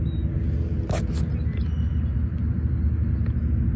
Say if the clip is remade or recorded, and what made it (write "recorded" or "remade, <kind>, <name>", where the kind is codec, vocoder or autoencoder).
recorded